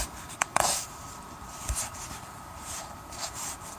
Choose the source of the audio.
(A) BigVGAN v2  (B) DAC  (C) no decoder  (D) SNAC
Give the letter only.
A